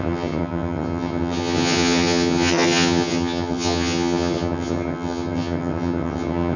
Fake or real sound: fake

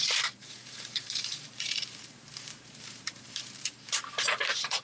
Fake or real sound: fake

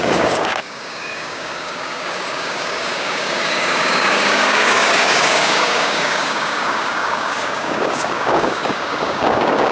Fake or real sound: fake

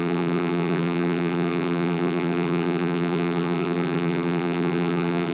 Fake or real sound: fake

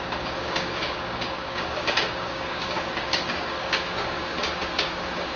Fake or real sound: fake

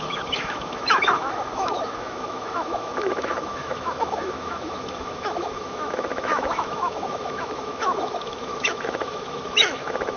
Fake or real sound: fake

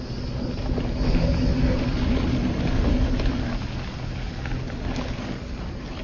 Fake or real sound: real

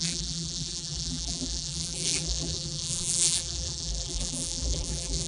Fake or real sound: fake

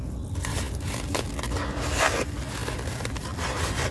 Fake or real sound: real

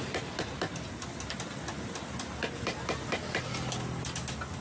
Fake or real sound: real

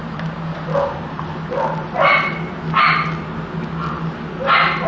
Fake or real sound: real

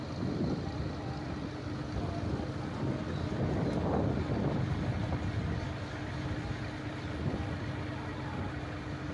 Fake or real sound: real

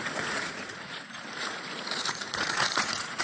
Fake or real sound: fake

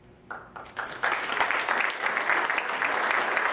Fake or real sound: real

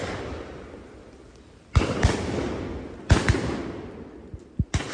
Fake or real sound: real